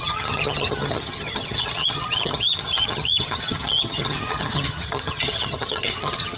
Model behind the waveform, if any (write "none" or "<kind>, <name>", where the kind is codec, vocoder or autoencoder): vocoder, HiFi-GAN